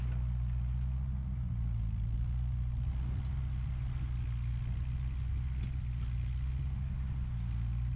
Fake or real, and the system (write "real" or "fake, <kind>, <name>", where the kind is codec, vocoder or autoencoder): real